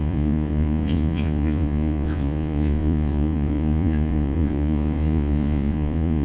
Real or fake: fake